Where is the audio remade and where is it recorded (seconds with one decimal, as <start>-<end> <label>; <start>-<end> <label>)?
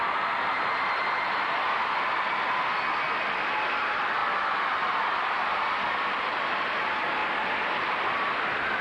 0.0-4.2 recorded; 4.2-5.7 remade; 5.7-7.2 recorded; 7.2-8.1 remade; 8.1-8.8 recorded